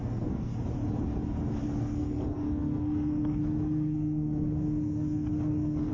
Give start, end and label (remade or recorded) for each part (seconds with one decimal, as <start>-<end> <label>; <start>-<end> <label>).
0.0-0.5 remade; 0.5-1.6 recorded; 1.6-5.9 remade